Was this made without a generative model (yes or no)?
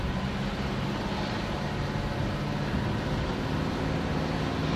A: yes